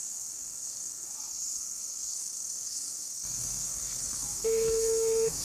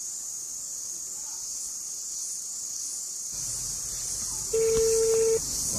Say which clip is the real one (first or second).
second